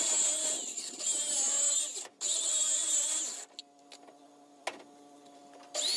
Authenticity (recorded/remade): recorded